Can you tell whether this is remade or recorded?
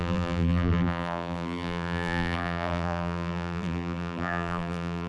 remade